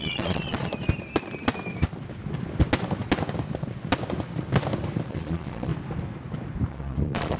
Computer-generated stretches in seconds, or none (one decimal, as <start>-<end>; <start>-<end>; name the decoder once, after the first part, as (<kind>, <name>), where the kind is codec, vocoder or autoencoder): 0.0-0.7 (vocoder, Vocos); 5.1-5.7; 6.7-7.4